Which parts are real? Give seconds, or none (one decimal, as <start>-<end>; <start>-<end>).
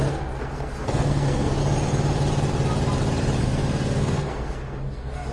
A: 1.6-3.4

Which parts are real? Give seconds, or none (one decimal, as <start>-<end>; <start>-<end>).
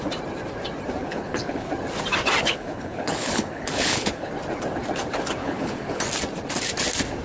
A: 0.0-1.0; 1.7-2.4; 4.3-5.4; 6.0-7.2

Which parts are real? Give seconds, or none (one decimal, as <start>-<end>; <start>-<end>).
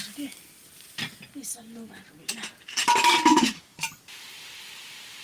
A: 0.0-3.3; 4.0-5.2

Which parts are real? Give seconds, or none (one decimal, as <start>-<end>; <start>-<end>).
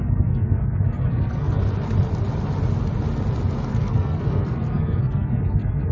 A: 1.6-3.7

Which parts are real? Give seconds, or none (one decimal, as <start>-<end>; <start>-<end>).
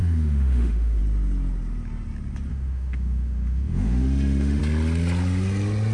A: 1.0-2.5; 4.6-5.9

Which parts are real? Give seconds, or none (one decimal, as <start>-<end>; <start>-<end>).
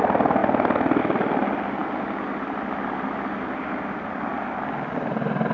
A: 0.0-5.5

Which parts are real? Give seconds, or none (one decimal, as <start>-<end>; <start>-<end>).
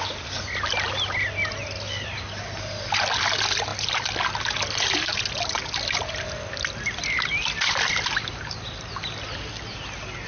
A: 0.0-10.3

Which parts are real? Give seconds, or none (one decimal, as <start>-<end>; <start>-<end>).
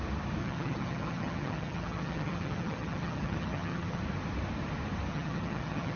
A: 0.0-0.4; 4.0-5.1